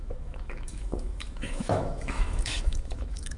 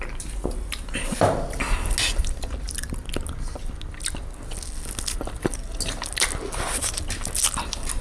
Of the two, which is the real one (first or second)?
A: second